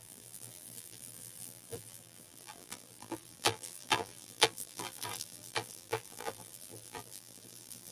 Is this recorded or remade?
remade